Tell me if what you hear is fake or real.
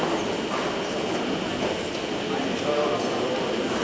real